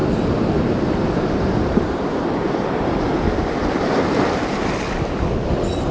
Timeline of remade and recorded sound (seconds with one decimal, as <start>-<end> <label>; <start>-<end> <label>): 0.0-3.5 remade; 3.5-5.9 recorded